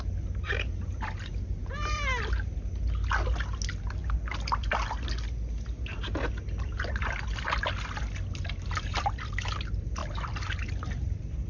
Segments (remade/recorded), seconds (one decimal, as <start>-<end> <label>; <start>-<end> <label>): 0.0-11.5 recorded